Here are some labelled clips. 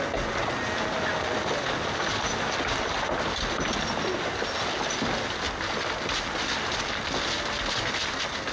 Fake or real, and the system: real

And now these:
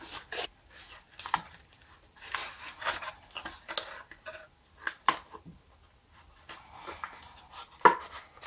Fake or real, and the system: real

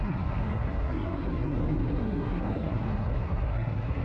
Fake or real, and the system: fake, codec, SNAC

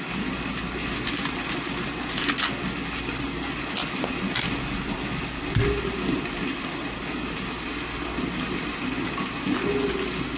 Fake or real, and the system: real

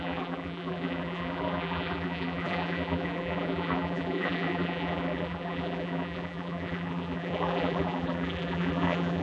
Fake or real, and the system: fake, vocoder, BigVGAN v2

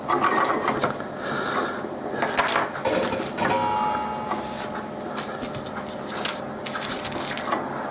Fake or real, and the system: real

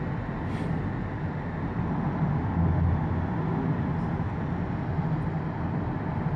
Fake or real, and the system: real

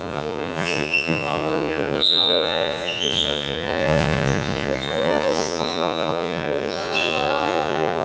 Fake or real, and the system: fake, vocoder, Vocos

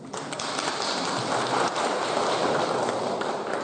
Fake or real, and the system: real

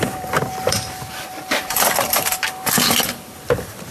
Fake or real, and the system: fake, vocoder, BigVGAN v2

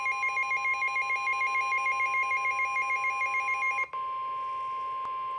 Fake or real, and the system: real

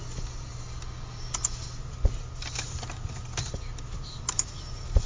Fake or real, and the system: real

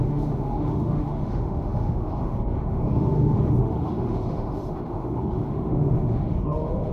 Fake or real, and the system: fake, autoencoder, DAC-VAE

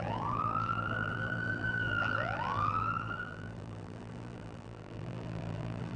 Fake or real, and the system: fake, vocoder, BigVGAN v2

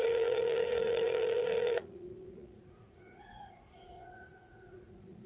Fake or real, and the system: fake, vocoder, Vocos